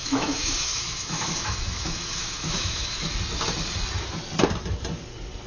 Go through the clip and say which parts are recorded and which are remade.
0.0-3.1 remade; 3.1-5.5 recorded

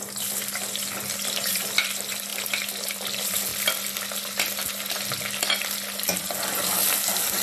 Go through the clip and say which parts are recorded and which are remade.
0.0-7.4 recorded

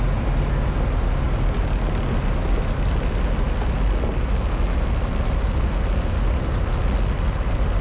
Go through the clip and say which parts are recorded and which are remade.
0.0-7.8 recorded